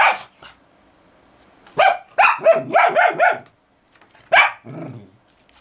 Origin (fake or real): real